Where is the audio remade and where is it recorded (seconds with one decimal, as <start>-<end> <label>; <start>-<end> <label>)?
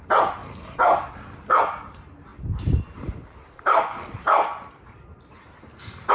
0.0-6.1 recorded